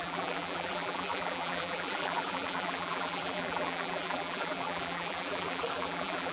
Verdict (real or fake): fake